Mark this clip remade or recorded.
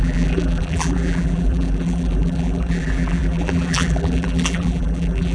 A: remade